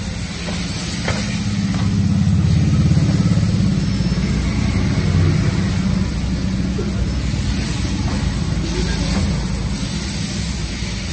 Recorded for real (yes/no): yes